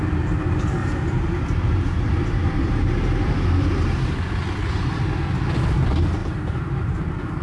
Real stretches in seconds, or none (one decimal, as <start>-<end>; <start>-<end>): 0.0-0.8; 4.2-6.2; 7.0-7.4